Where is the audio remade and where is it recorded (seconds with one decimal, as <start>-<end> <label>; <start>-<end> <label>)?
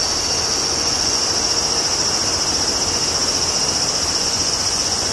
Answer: 0.0-0.6 recorded; 0.6-1.2 remade; 1.2-4.2 recorded; 4.2-5.1 remade